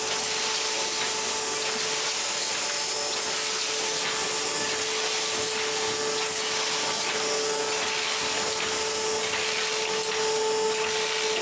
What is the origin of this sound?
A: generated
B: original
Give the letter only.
B